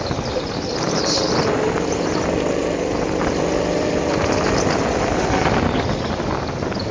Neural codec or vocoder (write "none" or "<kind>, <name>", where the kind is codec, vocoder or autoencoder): none